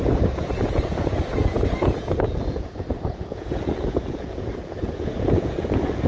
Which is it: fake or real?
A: fake